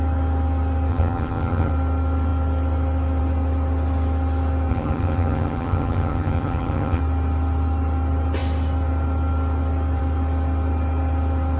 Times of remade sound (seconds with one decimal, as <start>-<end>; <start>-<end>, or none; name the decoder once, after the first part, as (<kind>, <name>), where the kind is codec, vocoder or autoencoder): 0.9-1.7 (vocoder, HiFi-GAN); 4.7-7.0